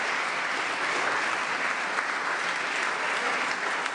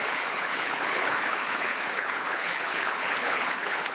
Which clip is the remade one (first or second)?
second